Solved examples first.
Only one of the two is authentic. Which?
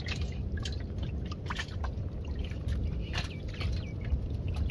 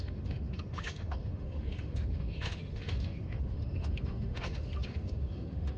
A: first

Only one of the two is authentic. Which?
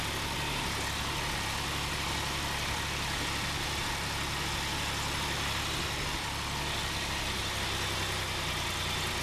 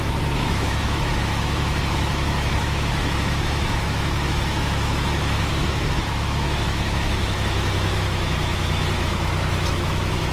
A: first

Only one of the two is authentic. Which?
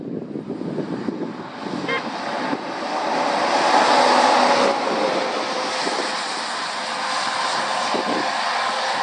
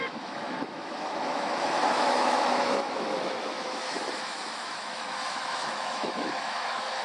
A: first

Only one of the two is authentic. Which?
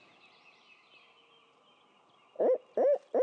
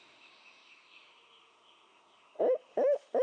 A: first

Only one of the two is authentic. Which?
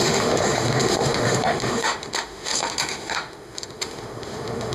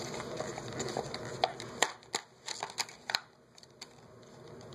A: second